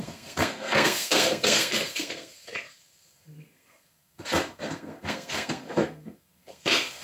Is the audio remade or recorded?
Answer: remade